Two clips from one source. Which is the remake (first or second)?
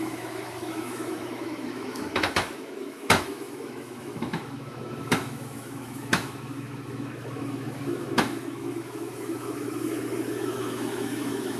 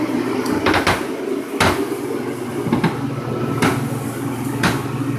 first